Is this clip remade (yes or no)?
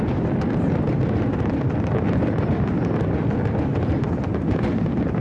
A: no